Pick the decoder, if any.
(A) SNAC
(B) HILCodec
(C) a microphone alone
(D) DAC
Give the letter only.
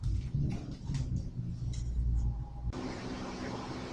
C